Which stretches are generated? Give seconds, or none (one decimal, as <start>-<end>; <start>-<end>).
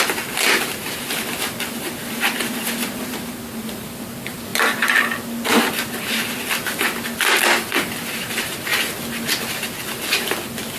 none